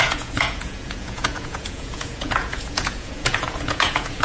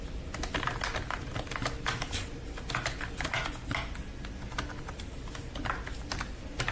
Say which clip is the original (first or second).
second